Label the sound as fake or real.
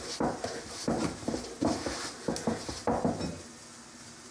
real